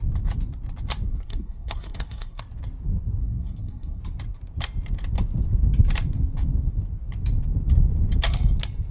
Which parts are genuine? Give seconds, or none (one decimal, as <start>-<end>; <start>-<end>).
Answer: 0.0-1.1; 2.4-3.2; 4.0-8.9